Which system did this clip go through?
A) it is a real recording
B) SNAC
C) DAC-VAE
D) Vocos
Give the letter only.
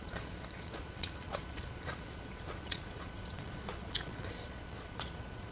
D